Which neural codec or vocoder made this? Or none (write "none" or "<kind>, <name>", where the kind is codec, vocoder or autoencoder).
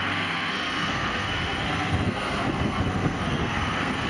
codec, SNAC